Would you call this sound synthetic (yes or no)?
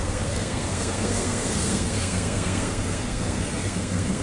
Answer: yes